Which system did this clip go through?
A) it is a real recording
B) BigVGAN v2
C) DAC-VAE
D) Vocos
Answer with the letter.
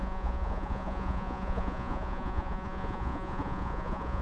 D